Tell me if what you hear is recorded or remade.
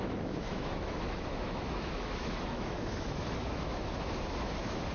remade